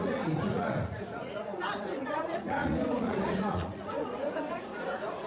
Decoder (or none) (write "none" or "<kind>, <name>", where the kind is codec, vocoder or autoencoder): vocoder, Vocos